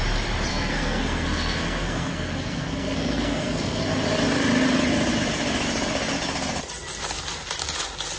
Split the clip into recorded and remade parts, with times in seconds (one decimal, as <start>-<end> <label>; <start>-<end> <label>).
0.0-0.5 recorded; 0.5-3.8 remade; 3.8-8.2 recorded